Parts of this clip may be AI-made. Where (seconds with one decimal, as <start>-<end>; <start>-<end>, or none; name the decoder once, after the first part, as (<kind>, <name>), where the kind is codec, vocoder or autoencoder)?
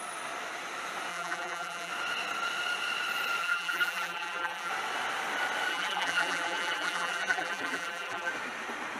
1.1-1.9 (vocoder, BigVGAN v2); 3.4-4.7; 5.7-8.3